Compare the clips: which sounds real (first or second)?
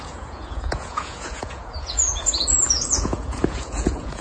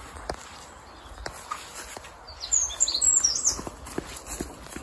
second